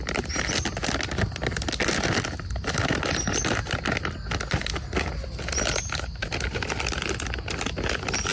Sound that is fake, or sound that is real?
real